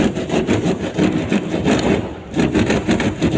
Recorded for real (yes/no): yes